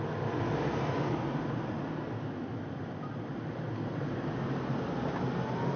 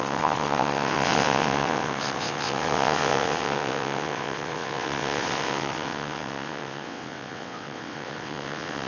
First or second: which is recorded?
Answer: first